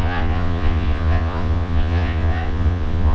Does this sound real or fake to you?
fake